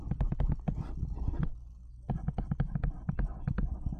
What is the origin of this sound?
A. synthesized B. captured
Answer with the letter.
B